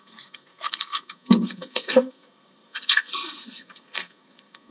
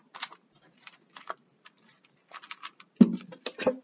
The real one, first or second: second